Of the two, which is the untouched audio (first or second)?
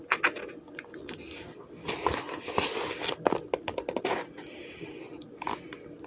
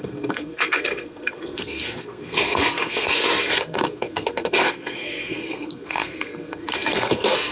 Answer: first